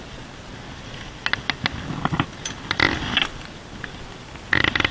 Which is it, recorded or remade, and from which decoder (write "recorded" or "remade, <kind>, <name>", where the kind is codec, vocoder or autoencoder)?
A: recorded